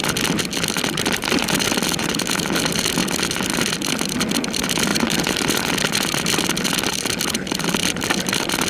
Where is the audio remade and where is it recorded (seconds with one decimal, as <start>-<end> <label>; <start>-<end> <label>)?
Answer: 0.0-0.5 recorded; 0.5-1.5 remade; 1.5-4.9 recorded; 4.9-5.7 remade; 5.7-8.7 recorded